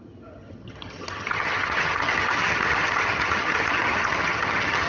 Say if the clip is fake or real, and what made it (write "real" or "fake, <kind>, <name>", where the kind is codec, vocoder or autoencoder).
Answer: fake, vocoder, HiFi-GAN